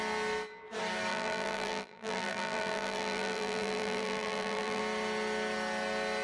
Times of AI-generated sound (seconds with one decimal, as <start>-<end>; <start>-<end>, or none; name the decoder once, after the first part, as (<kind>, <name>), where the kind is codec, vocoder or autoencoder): 1.1-4.8 (vocoder, BigVGAN v2)